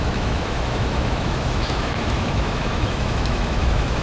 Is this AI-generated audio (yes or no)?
yes